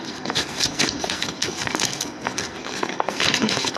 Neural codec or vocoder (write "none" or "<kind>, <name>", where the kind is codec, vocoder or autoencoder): codec, SNAC